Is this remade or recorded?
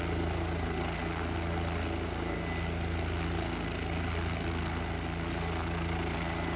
recorded